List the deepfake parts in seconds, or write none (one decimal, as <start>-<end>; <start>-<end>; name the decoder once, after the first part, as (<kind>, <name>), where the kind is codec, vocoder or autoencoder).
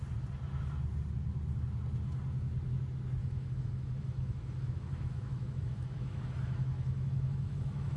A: 3.2-8.0 (autoencoder, DAC-VAE)